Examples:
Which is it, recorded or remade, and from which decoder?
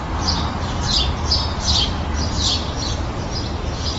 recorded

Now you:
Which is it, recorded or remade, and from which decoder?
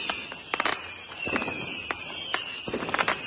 recorded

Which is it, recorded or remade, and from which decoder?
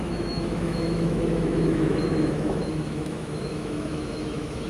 remade, autoencoder, DAC-VAE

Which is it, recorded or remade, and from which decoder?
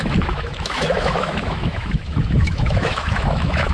remade, autoencoder, DAC-VAE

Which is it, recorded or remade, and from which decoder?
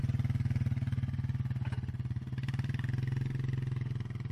recorded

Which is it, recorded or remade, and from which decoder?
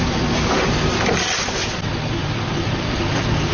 recorded